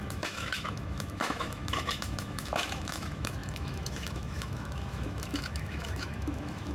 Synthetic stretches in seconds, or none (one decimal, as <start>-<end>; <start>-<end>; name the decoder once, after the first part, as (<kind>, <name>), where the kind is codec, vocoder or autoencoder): 0.0-6.7 (autoencoder, DAC-VAE)